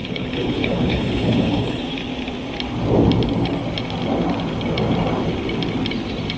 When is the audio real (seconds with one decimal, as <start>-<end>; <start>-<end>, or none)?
1.8-6.4